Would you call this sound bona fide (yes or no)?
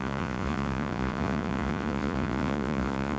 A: no